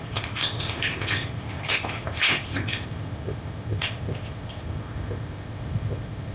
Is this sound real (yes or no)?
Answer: no